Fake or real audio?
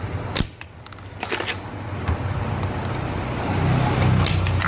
real